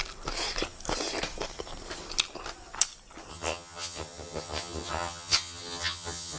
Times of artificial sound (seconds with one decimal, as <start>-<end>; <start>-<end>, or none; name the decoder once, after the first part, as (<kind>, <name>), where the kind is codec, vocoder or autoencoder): 3.3-6.4 (vocoder, HiFi-GAN)